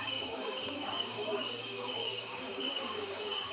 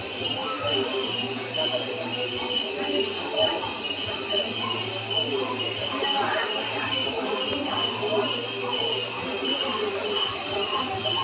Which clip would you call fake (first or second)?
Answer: first